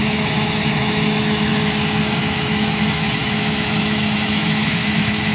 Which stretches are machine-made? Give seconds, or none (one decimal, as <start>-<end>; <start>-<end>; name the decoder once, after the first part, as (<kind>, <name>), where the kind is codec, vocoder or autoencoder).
0.0-1.5 (autoencoder, DAC-VAE); 2.2-5.3